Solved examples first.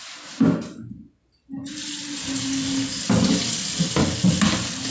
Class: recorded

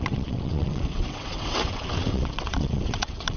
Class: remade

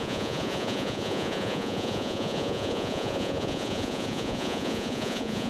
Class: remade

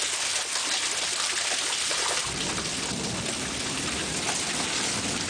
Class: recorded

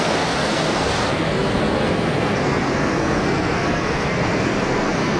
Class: remade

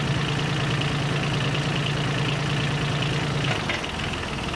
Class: recorded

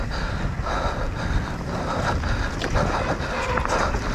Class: recorded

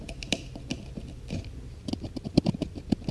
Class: remade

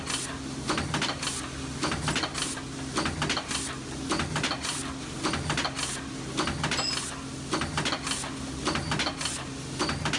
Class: recorded